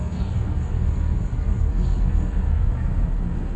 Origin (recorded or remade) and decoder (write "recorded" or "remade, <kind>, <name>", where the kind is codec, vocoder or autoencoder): remade, codec, SNAC